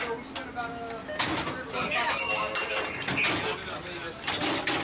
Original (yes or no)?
yes